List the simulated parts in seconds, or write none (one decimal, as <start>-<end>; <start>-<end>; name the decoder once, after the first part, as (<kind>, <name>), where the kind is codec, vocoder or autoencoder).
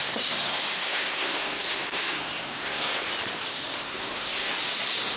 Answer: 0.0-3.1 (codec, SNAC); 3.5-4.5